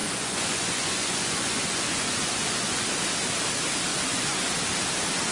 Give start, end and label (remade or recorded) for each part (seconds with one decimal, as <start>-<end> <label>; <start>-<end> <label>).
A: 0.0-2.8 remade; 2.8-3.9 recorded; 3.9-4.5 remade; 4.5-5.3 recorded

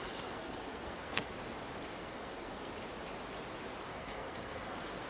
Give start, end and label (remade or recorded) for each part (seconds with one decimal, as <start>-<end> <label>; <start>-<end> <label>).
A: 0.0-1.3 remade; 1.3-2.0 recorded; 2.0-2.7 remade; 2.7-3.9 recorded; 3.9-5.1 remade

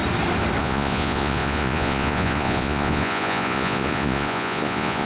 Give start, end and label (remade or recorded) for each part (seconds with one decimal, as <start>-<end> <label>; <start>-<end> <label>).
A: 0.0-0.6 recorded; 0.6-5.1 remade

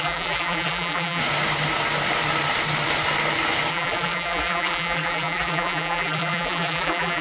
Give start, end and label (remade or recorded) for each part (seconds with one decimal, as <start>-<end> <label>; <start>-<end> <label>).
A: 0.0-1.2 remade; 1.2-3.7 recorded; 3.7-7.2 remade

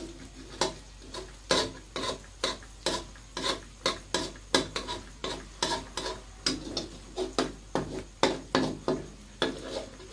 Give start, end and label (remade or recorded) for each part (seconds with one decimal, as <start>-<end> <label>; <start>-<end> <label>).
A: 0.0-10.1 recorded

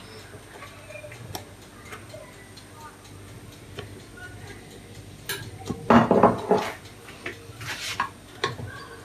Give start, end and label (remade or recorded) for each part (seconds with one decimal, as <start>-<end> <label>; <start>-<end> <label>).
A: 0.0-9.0 recorded

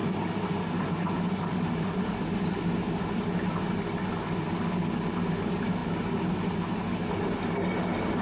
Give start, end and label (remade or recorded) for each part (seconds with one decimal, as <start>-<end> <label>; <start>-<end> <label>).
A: 0.0-3.5 remade; 3.5-5.8 recorded; 5.8-7.1 remade; 7.1-8.2 recorded

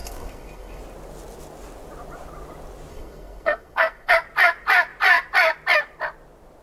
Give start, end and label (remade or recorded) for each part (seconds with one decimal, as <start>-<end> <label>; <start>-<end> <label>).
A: 0.0-0.8 remade; 0.8-2.9 recorded; 2.9-4.1 remade; 4.1-6.6 recorded